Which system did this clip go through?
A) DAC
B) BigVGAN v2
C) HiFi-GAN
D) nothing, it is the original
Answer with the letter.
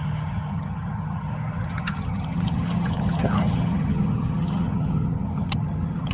C